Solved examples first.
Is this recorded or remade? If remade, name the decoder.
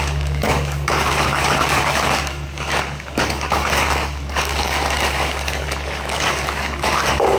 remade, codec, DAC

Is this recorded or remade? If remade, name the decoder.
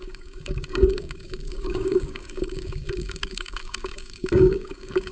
remade, codec, DAC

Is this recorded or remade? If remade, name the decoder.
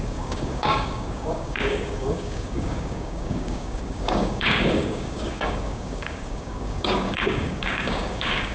remade, codec, DAC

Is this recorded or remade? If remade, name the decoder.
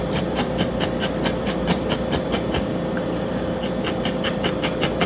recorded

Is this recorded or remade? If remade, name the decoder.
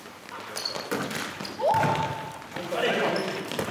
recorded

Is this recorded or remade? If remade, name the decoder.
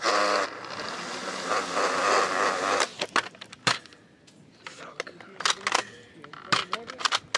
recorded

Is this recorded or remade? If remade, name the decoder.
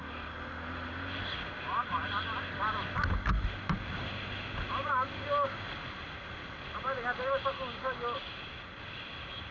recorded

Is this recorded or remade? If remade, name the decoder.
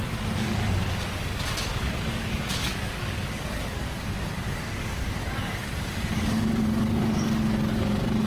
remade, codec, DAC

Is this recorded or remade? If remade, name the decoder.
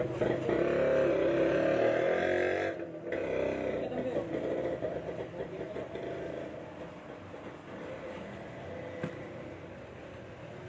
recorded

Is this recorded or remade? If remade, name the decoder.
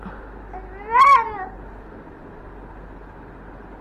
recorded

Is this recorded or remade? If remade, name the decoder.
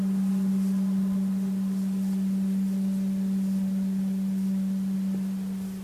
recorded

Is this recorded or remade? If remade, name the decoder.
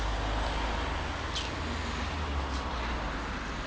recorded